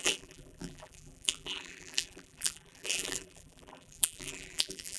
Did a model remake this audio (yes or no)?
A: yes